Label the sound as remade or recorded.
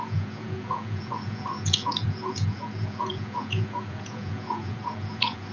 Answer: remade